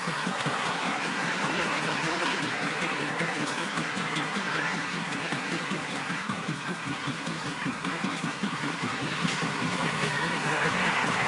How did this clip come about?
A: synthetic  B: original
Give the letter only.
A